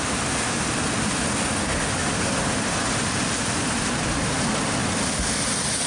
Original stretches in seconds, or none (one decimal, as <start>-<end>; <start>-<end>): 0.0-2.0; 3.1-5.9